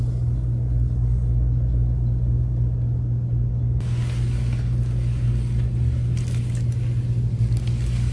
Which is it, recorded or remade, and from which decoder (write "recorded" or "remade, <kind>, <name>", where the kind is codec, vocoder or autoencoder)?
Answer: recorded